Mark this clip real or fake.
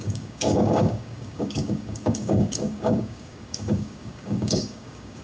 fake